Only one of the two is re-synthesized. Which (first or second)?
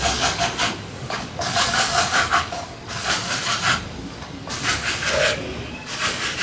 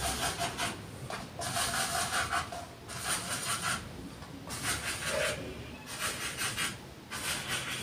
first